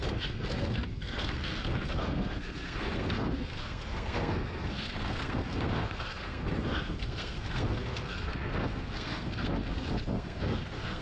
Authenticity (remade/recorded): remade